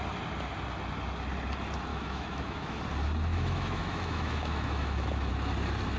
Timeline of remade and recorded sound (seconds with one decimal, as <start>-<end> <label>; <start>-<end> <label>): 0.0-1.9 recorded; 1.9-2.8 remade; 2.8-3.3 recorded; 3.3-5.3 remade; 5.3-6.0 recorded